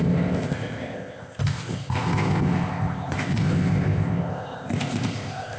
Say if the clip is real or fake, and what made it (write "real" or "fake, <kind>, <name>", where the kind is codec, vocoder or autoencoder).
fake, codec, ZipCodec